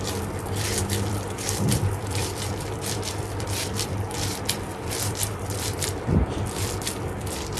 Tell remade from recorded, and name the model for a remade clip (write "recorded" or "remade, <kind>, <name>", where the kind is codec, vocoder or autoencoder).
remade, vocoder, BigVGAN v2